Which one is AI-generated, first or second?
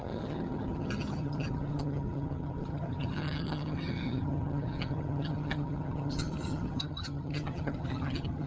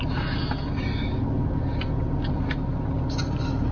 first